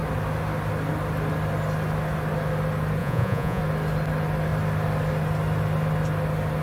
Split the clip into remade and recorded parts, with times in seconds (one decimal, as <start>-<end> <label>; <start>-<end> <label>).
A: 0.0-3.0 recorded; 3.0-3.6 remade; 3.6-6.6 recorded